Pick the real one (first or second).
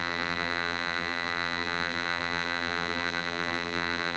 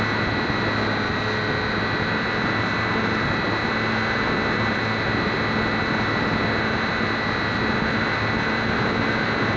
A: second